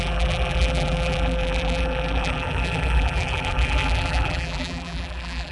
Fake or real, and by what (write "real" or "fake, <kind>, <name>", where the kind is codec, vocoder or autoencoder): fake, vocoder, BigVGAN v2